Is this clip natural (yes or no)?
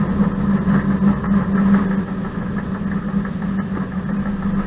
yes